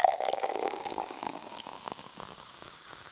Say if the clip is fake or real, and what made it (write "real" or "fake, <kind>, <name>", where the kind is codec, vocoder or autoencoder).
fake, codec, DAC